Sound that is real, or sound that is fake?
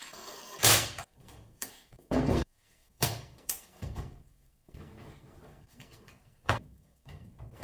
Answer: fake